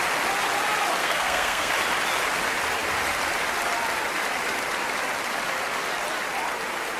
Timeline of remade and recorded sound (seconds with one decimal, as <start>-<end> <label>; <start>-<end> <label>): 0.0-1.0 recorded; 1.0-1.7 remade; 1.7-7.0 recorded